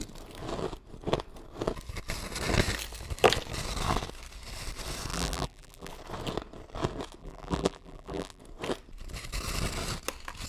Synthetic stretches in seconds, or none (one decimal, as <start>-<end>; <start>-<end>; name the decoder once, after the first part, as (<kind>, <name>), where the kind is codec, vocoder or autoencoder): 5.1-5.9 (vocoder, BigVGAN v2); 7.2-8.4